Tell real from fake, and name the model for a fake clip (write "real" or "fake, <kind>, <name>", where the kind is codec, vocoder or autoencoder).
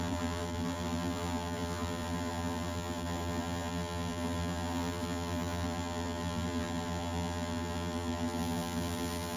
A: fake, vocoder, BigVGAN v2